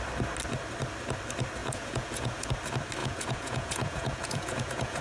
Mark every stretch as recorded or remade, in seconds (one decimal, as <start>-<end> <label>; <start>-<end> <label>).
0.0-1.6 recorded; 1.6-2.5 remade; 2.5-3.0 recorded; 3.0-5.0 remade